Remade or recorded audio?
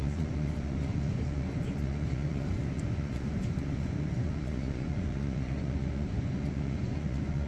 remade